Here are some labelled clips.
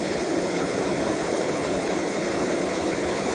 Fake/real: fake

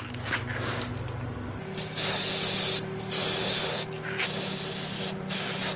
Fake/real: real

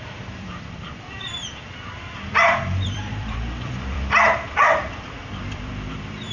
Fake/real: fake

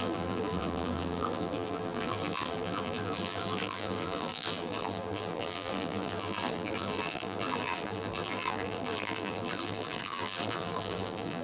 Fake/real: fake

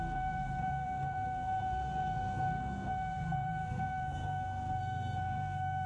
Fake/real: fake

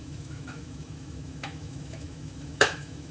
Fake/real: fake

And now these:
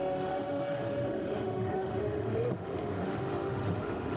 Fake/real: fake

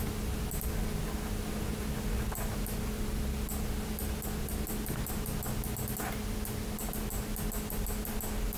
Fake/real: real